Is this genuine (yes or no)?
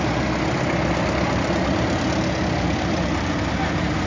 yes